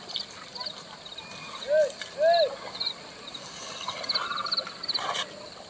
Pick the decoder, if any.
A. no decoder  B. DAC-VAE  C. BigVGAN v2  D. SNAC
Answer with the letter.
A